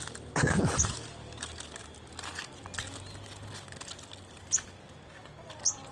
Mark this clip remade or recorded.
recorded